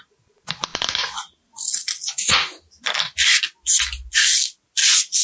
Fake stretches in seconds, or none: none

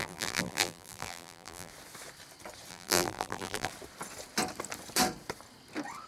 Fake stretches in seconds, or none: 0.0-1.7 (vocoder, BigVGAN v2); 2.7-3.7

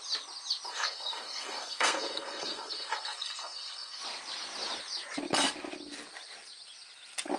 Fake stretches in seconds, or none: 0.7-4.0 (codec, SNAC)